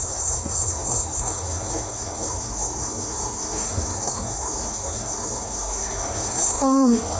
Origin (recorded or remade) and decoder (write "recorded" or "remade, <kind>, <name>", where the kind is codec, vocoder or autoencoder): remade, codec, SNAC